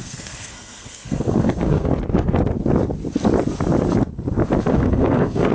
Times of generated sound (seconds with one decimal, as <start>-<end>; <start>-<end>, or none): 0.0-1.9; 4.7-5.5